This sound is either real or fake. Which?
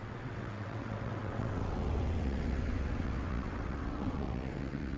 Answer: fake